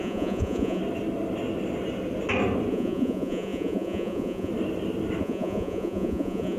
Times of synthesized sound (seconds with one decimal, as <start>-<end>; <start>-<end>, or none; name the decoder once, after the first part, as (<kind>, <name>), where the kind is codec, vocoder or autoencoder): 0.0-0.8 (vocoder, Vocos); 2.7-4.5; 5.2-6.6